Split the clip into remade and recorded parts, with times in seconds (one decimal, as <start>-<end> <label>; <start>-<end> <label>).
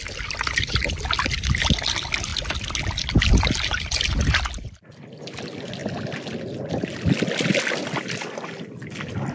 0.0-9.3 recorded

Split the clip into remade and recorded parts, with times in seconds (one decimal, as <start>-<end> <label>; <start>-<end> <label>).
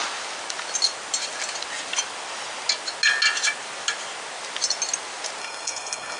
0.0-5.4 recorded; 5.4-6.2 remade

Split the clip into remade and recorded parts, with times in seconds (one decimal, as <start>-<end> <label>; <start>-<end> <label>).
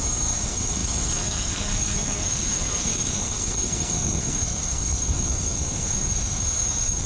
0.0-7.1 remade